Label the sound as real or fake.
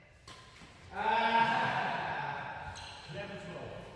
real